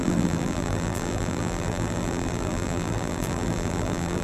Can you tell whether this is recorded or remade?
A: remade